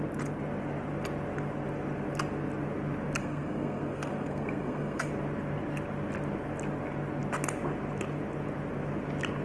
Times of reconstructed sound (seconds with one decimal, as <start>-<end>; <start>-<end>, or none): 3.2-5.1